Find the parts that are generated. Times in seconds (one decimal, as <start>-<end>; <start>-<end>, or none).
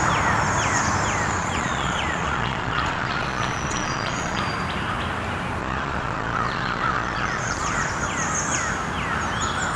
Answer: 1.3-4.4; 5.6-7.9